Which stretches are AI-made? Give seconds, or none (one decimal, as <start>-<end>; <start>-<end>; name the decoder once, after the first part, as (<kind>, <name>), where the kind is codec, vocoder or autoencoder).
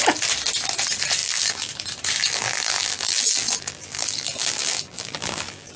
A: 1.2-1.7 (vocoder, BigVGAN v2); 2.2-5.8